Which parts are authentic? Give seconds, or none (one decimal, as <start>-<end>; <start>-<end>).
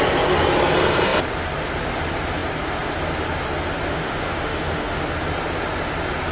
0.0-3.9; 5.0-6.3